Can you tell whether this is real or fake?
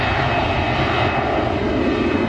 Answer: real